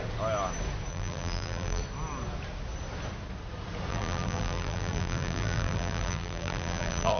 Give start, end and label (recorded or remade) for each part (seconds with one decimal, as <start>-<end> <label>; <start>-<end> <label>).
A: 0.0-0.9 recorded; 0.9-1.8 remade; 1.8-3.9 recorded; 3.9-7.2 remade